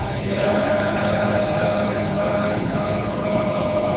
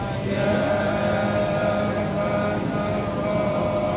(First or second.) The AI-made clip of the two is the first